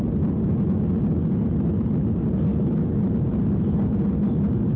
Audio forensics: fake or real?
real